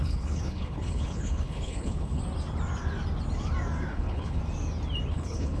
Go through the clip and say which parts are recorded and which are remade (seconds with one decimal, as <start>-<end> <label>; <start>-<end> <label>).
0.0-2.2 remade; 2.2-3.9 recorded; 3.9-4.4 remade; 4.4-5.1 recorded; 5.1-5.6 remade